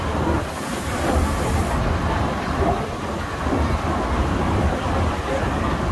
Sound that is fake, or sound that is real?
real